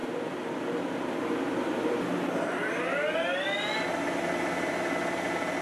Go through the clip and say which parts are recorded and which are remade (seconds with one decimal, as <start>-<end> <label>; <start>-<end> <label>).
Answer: 0.0-5.6 recorded

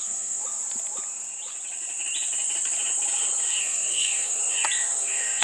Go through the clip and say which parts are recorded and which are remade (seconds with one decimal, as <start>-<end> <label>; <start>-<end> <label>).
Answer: 0.0-0.4 remade; 0.4-3.6 recorded; 3.6-4.4 remade; 4.4-5.0 recorded; 5.0-5.4 remade

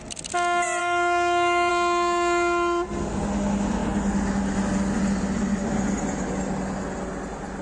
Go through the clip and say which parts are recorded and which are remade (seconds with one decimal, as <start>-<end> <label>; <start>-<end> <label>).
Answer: 0.0-0.8 recorded; 0.8-1.7 remade; 1.7-7.6 recorded

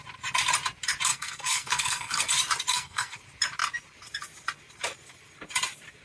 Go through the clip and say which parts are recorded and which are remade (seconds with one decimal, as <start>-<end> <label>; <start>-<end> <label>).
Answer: 0.0-1.1 recorded; 1.1-2.3 remade; 2.3-2.7 recorded; 2.7-3.2 remade; 3.2-6.0 recorded

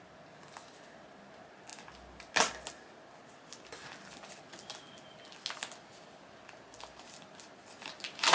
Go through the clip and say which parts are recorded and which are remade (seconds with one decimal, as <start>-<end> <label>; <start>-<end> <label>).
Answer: 0.0-8.3 recorded

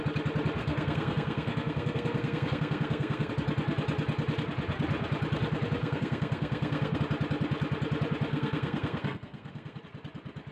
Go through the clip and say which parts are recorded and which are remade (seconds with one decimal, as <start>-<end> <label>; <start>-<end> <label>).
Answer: 0.0-0.6 recorded; 0.6-3.3 remade; 3.3-5.8 recorded; 5.8-7.0 remade; 7.0-8.3 recorded; 8.3-9.8 remade; 9.8-10.5 recorded

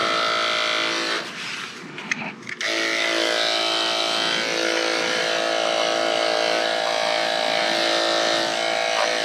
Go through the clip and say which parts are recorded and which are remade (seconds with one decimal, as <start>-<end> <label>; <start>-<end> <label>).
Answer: 0.0-9.2 recorded

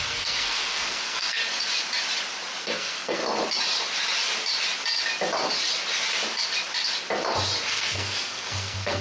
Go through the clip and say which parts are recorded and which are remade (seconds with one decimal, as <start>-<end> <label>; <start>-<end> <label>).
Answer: 0.0-1.4 remade; 1.4-2.6 recorded; 2.6-3.2 remade; 3.2-7.7 recorded; 7.7-9.0 remade